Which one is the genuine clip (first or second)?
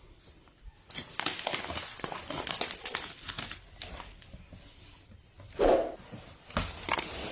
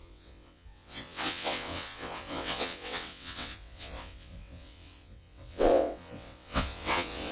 first